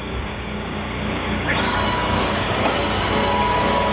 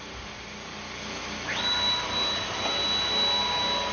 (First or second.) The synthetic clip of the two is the first